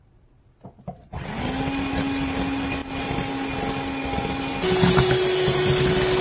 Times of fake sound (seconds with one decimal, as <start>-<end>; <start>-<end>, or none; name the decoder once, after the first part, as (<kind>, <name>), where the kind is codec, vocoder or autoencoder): none